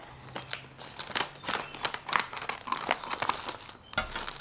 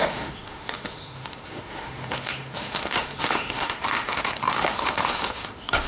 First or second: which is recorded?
first